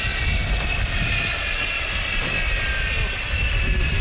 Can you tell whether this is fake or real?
real